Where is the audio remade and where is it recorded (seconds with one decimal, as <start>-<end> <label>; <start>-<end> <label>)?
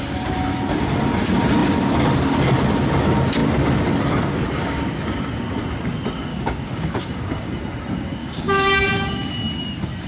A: 0.0-6.3 recorded; 6.3-7.6 remade; 7.6-8.2 recorded; 8.2-9.3 remade; 9.3-10.1 recorded